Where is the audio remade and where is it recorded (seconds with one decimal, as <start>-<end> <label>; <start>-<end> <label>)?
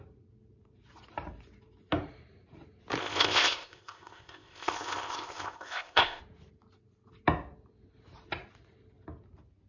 0.0-3.0 recorded; 3.0-6.2 remade; 6.2-9.7 recorded